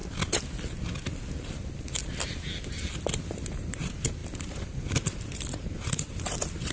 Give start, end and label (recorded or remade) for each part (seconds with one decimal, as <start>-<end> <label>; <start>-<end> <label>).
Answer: 0.0-1.3 recorded; 1.3-2.0 remade; 2.0-3.3 recorded; 3.3-6.7 remade